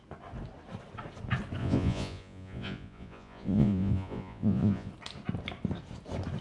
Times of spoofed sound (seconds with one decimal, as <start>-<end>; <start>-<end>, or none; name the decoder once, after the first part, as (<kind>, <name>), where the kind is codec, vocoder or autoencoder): 1.6-4.9 (vocoder, Vocos)